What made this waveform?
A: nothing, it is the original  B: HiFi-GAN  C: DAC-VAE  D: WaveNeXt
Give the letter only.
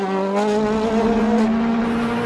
A